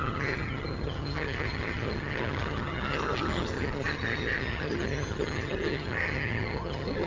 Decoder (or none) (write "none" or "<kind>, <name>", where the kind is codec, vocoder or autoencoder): vocoder, HiFi-GAN